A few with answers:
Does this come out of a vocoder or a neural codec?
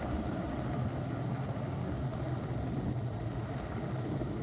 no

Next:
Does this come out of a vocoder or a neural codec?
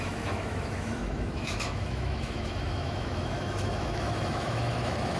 yes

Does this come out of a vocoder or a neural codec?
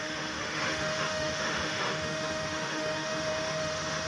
yes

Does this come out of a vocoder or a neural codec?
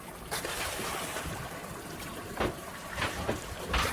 no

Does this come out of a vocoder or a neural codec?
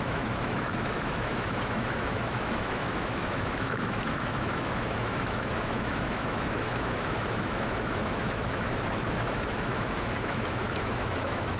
yes